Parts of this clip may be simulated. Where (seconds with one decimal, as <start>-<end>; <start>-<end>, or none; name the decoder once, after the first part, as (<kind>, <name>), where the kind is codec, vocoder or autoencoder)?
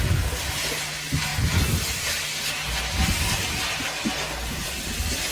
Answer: none